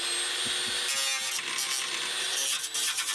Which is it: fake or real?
real